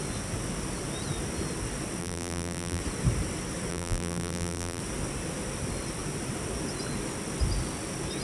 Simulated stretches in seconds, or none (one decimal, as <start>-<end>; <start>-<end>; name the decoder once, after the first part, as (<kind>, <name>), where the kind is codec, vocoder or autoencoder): 2.0-2.8 (vocoder, BigVGAN v2); 3.7-4.8